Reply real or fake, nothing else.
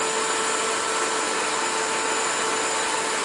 real